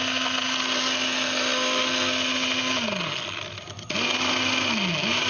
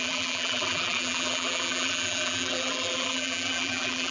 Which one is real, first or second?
first